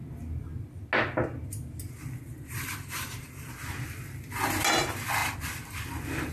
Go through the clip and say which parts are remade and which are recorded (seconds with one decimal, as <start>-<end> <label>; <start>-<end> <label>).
0.0-2.3 recorded; 2.3-3.5 remade; 3.5-6.3 recorded